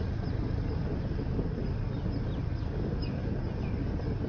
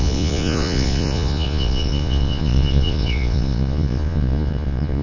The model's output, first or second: second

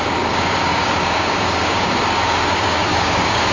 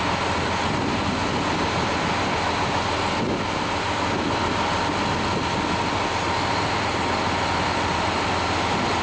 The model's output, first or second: first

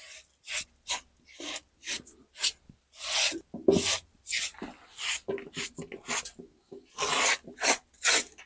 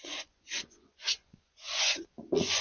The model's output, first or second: second